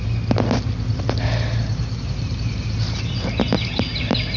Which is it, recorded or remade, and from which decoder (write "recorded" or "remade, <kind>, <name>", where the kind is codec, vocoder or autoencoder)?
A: recorded